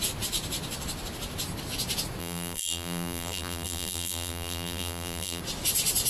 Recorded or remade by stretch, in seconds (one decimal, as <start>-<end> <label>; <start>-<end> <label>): 0.0-2.2 recorded; 2.2-5.4 remade; 5.4-6.1 recorded